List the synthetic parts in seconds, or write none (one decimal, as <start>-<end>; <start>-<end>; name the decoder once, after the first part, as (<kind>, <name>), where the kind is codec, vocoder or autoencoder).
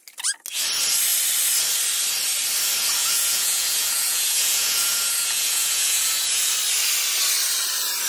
3.0-6.5 (vocoder, Vocos)